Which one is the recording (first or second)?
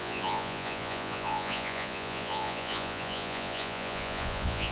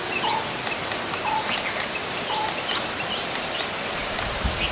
second